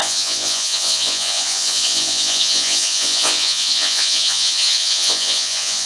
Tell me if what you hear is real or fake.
fake